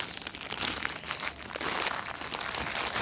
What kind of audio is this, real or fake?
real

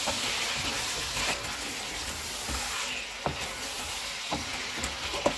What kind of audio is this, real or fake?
real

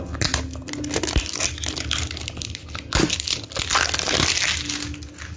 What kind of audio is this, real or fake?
real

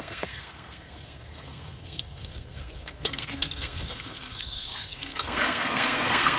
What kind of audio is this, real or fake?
fake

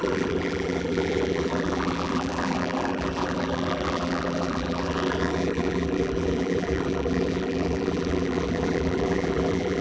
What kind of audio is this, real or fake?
fake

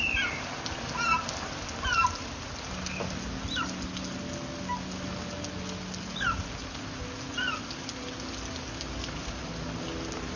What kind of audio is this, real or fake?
real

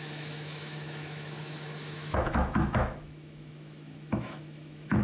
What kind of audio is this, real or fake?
fake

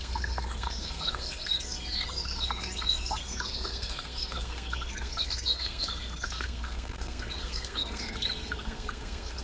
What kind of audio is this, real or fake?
fake